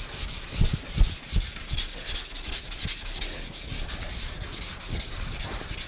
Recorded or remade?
recorded